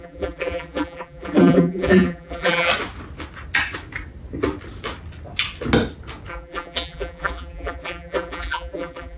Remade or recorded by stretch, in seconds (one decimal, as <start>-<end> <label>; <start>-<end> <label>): 0.0-2.7 remade; 2.7-6.3 recorded; 6.3-9.2 remade